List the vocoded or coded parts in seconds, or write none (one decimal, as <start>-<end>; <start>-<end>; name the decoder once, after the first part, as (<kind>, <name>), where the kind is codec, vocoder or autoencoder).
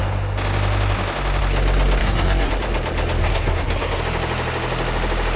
2.0-2.5 (codec, SNAC); 3.2-4.0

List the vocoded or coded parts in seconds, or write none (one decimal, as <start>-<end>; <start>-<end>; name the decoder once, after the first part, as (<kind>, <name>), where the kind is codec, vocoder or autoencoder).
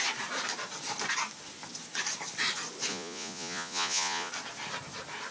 2.9-4.3 (vocoder, Vocos)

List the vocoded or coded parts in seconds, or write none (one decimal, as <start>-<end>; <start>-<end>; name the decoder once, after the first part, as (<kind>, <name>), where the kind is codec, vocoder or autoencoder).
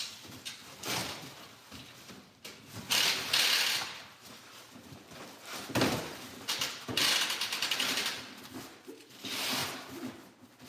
0.0-6.9 (vocoder, BigVGAN v2); 9.2-9.6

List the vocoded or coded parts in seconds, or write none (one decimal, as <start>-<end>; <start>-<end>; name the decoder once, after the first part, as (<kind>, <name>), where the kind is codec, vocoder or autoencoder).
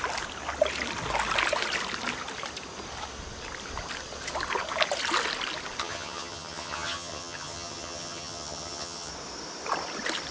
5.8-9.1 (vocoder, HiFi-GAN)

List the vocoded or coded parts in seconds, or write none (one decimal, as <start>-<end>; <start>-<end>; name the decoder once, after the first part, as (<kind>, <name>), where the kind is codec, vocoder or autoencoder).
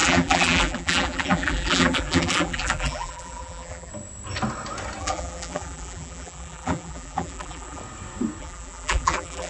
0.0-3.9 (vocoder, BigVGAN v2); 5.0-7.8; 8.4-9.5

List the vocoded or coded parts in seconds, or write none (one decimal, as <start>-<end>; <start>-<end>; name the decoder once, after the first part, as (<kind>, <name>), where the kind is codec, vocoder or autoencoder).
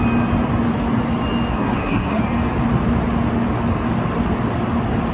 1.5-2.2 (codec, SNAC)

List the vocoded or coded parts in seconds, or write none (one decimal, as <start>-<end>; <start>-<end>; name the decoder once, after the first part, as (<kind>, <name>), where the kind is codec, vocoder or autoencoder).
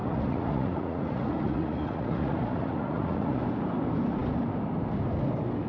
0.0-3.4 (vocoder, Vocos)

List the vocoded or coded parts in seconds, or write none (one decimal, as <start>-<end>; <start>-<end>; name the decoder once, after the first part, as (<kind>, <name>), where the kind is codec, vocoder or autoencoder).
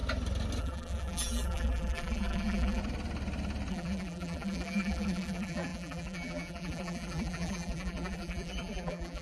0.6-2.8 (vocoder, BigVGAN v2); 3.7-9.2